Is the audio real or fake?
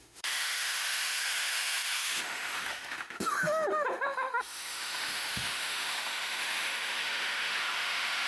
fake